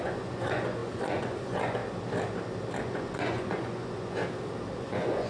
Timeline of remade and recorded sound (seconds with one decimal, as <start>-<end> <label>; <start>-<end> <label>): 0.0-1.8 remade; 1.8-2.8 recorded; 2.8-4.2 remade; 4.2-4.8 recorded; 4.8-5.3 remade